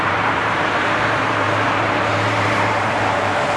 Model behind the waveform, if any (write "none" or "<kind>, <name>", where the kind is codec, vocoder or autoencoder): vocoder, BigVGAN v2